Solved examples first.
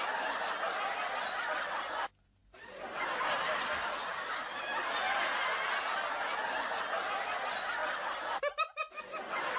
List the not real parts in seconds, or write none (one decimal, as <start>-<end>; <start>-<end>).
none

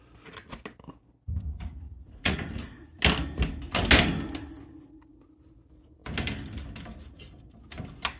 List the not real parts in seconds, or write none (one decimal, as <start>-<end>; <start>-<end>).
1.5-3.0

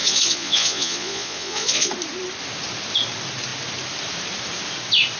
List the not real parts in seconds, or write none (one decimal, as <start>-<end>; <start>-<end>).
0.0-1.9

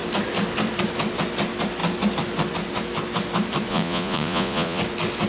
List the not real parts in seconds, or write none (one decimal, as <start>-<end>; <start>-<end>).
3.7-4.8

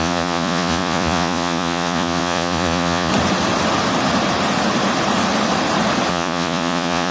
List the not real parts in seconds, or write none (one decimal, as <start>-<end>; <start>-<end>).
0.0-3.1; 6.1-7.1

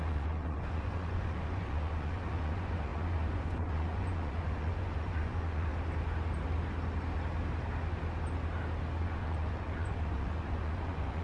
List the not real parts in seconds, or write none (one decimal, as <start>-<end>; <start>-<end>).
0.0-5.7; 9.0-11.2

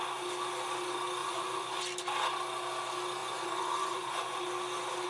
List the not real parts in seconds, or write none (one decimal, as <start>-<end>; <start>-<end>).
1.2-1.8; 3.2-4.4

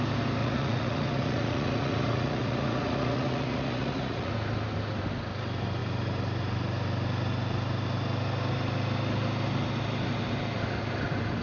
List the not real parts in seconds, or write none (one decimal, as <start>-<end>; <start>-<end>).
0.4-4.3